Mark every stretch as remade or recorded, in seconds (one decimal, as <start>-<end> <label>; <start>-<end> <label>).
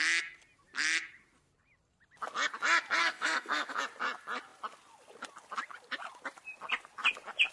0.0-3.0 recorded; 3.0-3.8 remade; 3.8-7.5 recorded